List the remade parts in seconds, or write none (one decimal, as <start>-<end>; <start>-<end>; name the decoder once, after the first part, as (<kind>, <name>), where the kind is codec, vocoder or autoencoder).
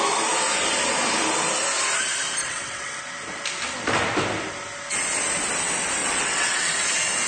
2.4-3.0 (vocoder, WaveNeXt); 6.0-6.7